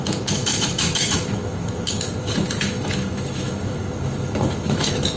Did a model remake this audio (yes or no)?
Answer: yes